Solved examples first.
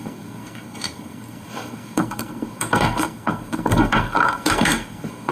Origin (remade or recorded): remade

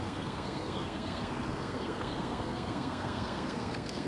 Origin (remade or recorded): remade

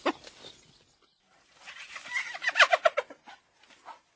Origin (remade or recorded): recorded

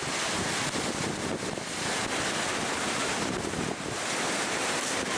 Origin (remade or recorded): recorded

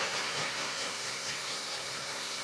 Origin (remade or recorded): remade